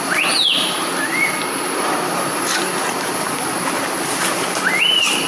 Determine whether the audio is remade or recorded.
recorded